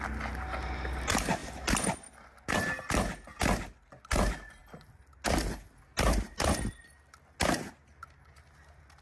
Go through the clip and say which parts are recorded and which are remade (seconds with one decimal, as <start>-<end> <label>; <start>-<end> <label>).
0.0-9.0 recorded